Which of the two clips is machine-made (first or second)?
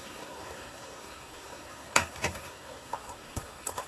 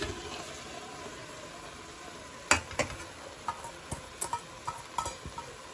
first